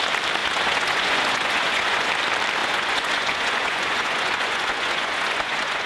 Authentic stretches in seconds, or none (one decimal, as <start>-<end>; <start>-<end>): 0.0-0.4; 2.1-2.6